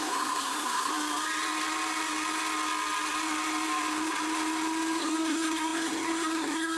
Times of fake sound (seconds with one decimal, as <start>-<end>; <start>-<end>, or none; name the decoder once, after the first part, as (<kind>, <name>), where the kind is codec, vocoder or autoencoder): 0.0-0.9 (codec, SNAC); 5.0-6.8

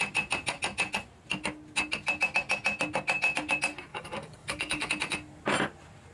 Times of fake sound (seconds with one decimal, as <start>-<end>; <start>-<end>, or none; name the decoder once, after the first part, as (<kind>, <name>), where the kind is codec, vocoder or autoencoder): 3.9-4.9 (codec, DAC)

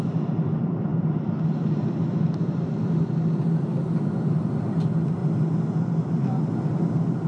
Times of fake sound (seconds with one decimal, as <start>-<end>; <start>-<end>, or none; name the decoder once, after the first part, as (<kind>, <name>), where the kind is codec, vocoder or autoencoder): none

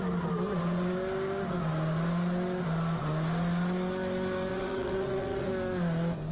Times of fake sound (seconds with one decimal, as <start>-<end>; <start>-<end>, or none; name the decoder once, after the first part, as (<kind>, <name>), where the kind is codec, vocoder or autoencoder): 4.5-5.5 (vocoder, WaveNeXt)